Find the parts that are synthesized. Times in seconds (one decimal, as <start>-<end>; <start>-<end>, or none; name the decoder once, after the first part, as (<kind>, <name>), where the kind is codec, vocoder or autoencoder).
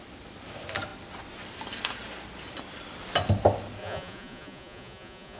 3.8-5.4 (vocoder, Vocos)